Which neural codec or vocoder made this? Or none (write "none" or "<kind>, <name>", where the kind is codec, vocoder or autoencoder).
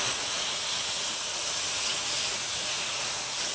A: vocoder, Vocos